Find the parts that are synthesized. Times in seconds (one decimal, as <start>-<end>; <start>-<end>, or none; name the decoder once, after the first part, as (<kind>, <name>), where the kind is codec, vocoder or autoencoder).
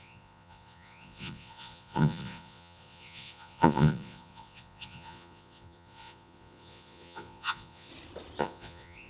0.0-7.9 (vocoder, Vocos); 8.4-9.1